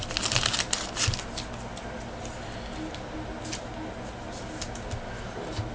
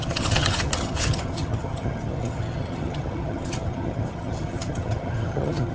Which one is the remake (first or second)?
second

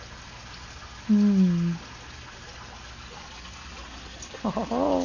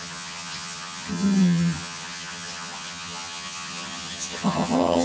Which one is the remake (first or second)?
second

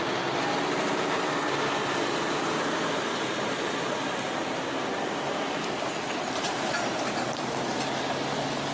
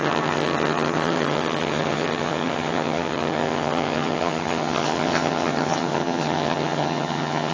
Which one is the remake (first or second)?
second